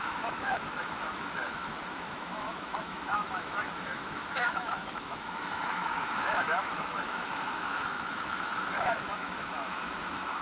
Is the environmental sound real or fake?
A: fake